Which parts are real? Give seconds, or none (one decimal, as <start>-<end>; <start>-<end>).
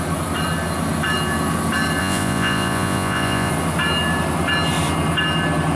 0.0-2.0; 3.5-5.8